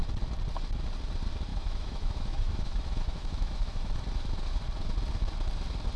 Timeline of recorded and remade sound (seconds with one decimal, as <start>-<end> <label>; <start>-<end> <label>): 0.0-1.5 recorded; 1.5-3.9 remade; 3.9-6.0 recorded